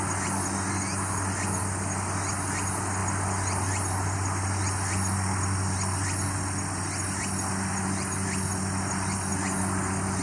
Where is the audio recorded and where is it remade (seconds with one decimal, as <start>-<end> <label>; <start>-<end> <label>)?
0.0-10.2 recorded